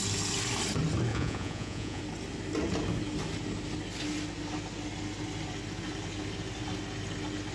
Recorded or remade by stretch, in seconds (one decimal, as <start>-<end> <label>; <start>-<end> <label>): 0.0-1.1 recorded; 1.1-2.0 remade; 2.0-7.5 recorded